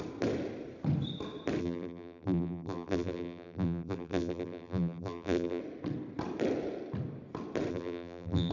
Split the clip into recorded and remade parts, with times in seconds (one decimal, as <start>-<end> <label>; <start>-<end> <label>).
0.0-1.6 recorded; 1.6-5.6 remade; 5.6-7.7 recorded; 7.7-8.5 remade